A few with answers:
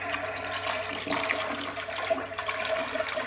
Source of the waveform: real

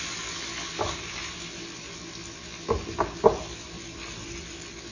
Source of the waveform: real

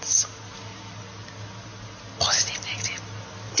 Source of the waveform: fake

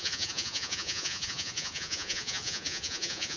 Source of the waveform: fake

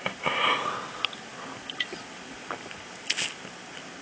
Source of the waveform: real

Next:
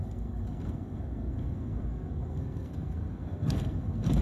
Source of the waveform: fake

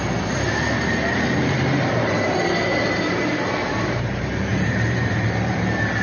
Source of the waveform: fake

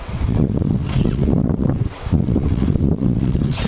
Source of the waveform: fake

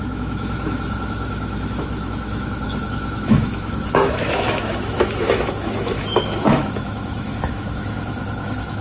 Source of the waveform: fake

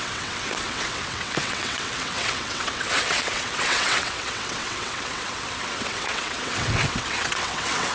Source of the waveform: fake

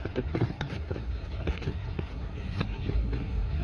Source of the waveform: fake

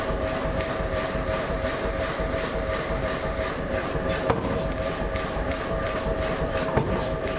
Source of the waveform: fake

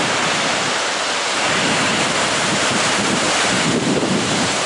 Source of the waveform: fake